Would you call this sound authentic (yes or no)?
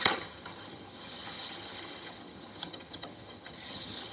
no